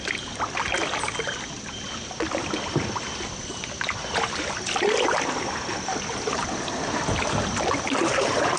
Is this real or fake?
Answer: real